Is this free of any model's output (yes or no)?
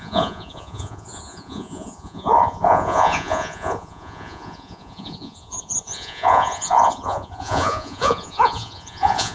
no